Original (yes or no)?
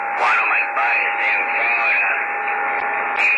yes